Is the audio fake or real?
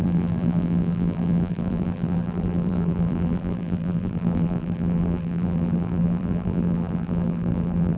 fake